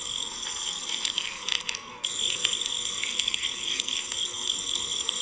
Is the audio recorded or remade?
remade